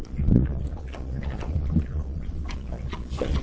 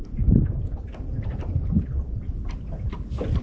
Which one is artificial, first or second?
first